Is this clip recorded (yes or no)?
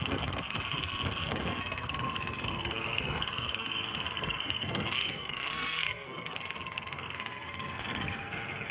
no